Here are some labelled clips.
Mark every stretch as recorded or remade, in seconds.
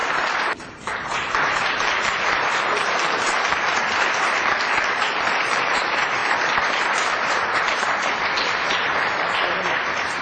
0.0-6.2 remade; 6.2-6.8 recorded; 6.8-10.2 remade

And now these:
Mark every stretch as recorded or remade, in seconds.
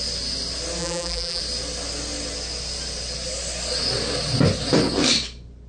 0.0-0.8 recorded; 0.8-1.4 remade; 1.4-5.7 recorded